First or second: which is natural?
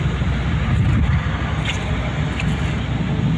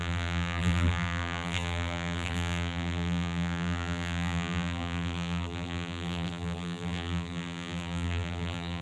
first